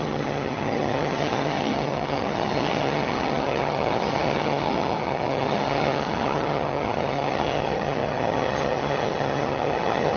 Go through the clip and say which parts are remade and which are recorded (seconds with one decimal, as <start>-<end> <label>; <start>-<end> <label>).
0.0-10.2 remade